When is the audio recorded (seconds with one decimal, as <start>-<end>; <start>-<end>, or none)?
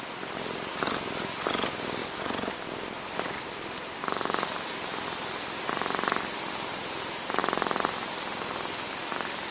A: 0.0-9.5